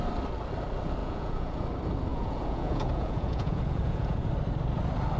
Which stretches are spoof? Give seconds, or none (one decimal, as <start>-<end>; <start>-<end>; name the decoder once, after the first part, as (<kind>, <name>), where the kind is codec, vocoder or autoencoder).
1.0-1.6 (vocoder, Vocos); 2.1-4.3